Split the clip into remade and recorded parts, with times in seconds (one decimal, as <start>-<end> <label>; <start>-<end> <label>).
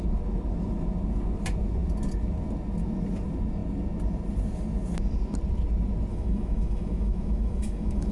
0.0-6.1 recorded; 6.1-8.1 remade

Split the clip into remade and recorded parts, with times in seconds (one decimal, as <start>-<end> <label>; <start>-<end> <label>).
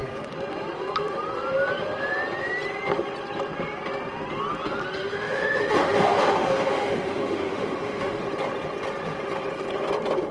0.0-5.0 recorded; 5.0-8.2 remade; 8.2-10.3 recorded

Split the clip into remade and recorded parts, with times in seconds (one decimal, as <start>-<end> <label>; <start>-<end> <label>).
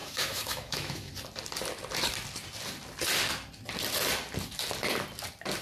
0.0-1.1 remade; 1.1-5.6 recorded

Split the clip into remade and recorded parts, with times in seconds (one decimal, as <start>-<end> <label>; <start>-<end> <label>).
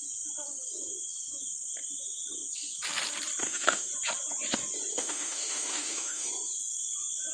0.0-3.4 recorded; 3.4-3.9 remade; 3.9-4.9 recorded; 4.9-6.3 remade; 6.3-7.3 recorded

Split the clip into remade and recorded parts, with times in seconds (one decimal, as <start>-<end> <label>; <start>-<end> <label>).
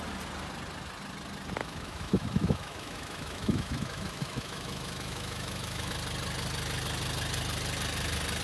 0.0-1.6 recorded; 1.6-5.9 remade; 5.9-8.4 recorded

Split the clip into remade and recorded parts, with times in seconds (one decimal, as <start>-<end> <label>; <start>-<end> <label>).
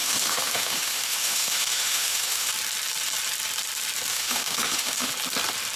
0.0-2.5 remade; 2.5-4.1 recorded; 4.1-5.1 remade; 5.1-5.8 recorded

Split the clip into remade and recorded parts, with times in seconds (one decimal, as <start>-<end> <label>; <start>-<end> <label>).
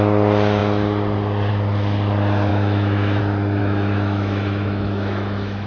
0.0-2.5 recorded; 2.5-3.2 remade; 3.2-3.6 recorded; 3.6-5.7 remade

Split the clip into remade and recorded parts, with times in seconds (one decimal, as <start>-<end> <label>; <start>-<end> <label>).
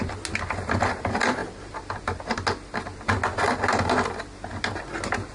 0.0-5.3 recorded